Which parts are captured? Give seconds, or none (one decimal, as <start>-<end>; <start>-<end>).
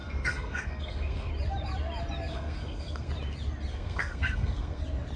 1.3-2.3; 3.1-3.7; 4.8-5.2